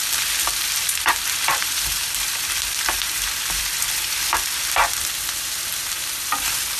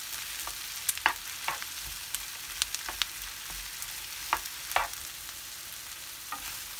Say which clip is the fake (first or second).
first